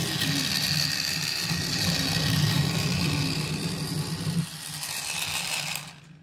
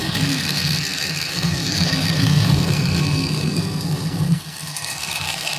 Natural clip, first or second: first